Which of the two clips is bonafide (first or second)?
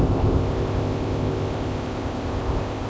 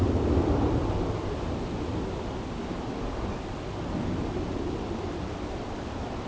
second